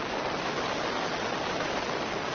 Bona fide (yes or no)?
yes